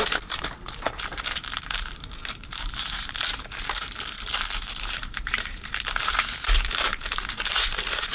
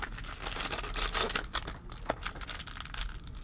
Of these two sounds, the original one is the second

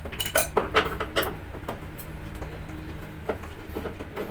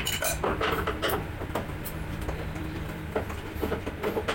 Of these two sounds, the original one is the first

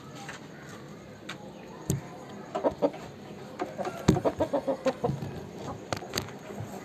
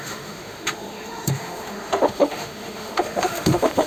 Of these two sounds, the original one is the first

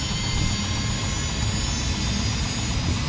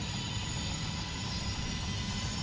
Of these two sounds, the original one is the first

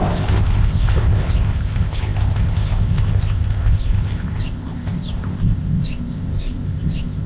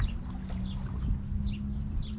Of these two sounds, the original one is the second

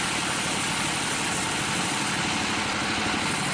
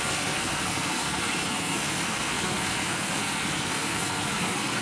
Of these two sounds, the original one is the first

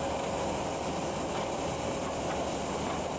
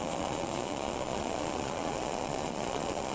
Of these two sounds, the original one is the first